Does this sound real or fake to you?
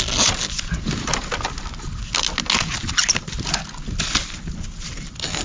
real